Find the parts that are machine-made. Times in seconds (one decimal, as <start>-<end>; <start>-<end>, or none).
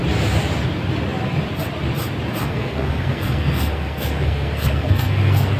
2.4-5.6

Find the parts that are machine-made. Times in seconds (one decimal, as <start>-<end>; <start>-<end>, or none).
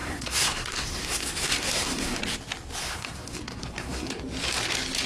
0.0-2.2; 2.8-4.2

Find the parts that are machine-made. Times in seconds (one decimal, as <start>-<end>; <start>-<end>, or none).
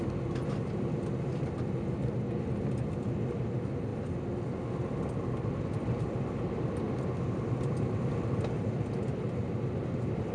none